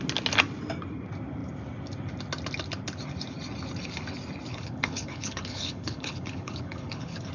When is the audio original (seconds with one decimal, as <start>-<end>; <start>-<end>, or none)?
0.0-4.5